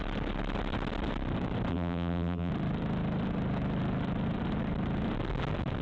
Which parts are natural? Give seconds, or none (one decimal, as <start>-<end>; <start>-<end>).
0.0-1.7; 2.5-5.8